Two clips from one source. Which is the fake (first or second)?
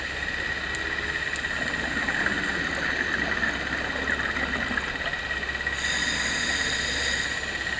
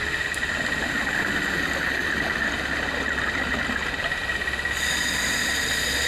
second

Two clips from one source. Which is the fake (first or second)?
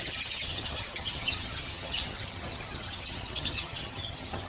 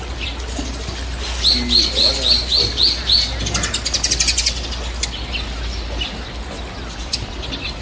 first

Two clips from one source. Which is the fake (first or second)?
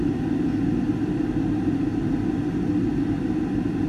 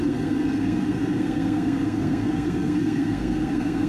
second